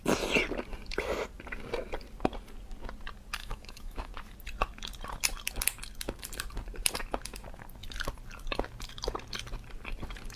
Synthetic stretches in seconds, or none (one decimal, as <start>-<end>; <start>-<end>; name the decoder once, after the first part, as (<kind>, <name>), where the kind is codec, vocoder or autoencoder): 3.4-4.1 (autoencoder, DAC-VAE)